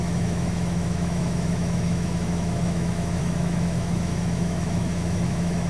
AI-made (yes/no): yes